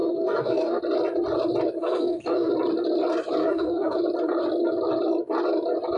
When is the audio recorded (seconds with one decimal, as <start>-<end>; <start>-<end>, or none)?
0.8-1.8; 2.5-3.4; 4.0-6.0